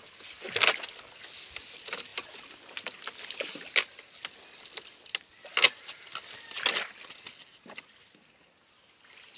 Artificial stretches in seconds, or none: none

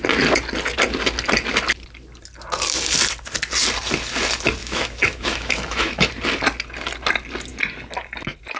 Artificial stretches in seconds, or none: 4.6-6.1

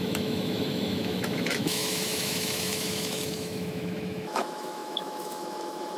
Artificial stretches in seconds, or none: 0.0-6.0

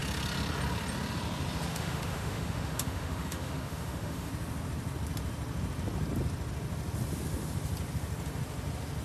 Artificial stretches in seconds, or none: 1.7-4.3